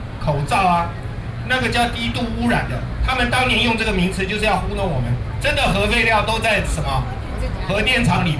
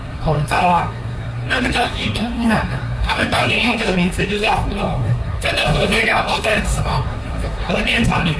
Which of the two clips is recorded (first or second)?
first